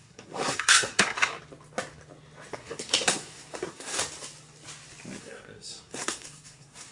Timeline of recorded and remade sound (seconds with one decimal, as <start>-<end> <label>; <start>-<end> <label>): 0.0-1.3 remade; 1.3-2.5 recorded; 2.5-4.0 remade; 4.0-5.2 recorded; 5.2-6.9 remade